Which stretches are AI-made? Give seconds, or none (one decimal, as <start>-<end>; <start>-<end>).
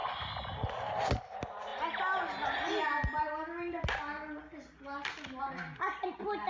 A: none